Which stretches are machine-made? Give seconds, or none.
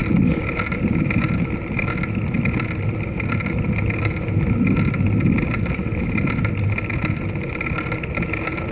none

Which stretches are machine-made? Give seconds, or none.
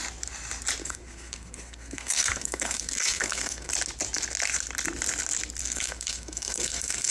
0.8-3.7; 5.6-7.1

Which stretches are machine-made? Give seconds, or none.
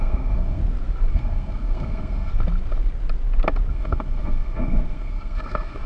0.0-0.6; 1.1-2.3; 3.7-5.9